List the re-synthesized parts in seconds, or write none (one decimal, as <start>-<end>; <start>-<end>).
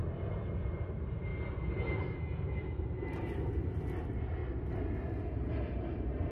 0.0-1.3; 3.0-4.4; 5.7-6.3